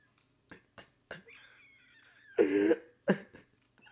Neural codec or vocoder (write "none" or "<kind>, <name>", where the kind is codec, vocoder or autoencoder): none